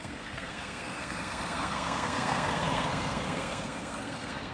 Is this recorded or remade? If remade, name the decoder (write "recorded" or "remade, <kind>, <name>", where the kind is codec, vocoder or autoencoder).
remade, codec, SNAC